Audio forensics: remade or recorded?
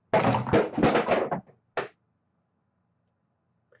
recorded